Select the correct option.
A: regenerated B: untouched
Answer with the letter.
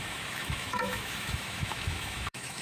A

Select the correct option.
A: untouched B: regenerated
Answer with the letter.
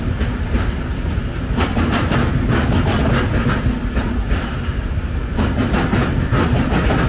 A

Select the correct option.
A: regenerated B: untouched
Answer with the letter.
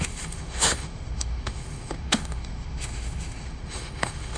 A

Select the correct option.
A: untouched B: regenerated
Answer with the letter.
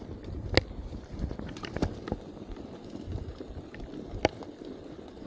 A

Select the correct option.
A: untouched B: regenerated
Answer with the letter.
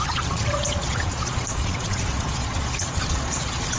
B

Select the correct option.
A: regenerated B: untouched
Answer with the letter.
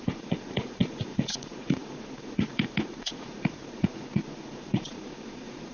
A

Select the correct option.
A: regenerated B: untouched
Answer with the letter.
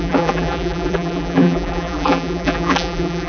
A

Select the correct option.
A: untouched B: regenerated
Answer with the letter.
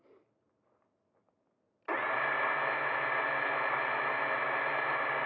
A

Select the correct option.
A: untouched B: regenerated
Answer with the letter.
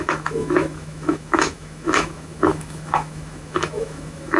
B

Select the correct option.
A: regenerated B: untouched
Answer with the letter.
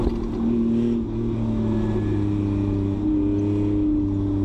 B